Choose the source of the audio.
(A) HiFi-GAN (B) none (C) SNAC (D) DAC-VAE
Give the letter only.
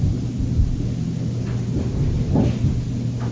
B